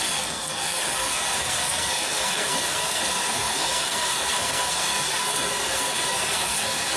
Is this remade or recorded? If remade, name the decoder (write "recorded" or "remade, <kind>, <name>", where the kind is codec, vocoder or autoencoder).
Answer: remade, codec, SNAC